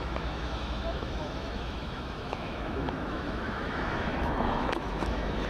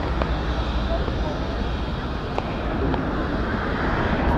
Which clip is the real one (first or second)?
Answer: second